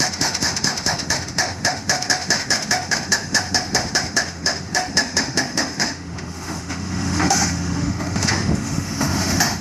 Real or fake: fake